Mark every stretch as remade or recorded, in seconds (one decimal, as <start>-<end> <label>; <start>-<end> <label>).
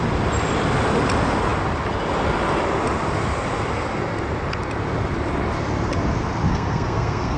0.0-6.5 recorded; 6.5-7.4 remade